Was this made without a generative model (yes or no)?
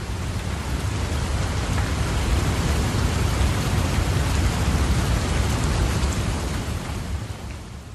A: yes